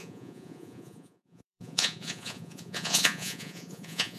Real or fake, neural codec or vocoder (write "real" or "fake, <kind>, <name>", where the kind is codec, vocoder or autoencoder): fake, vocoder, Vocos